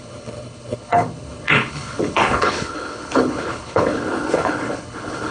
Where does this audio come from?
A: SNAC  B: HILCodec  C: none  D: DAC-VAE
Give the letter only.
B